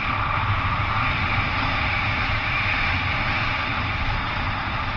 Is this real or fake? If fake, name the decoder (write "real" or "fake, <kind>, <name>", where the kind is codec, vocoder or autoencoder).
real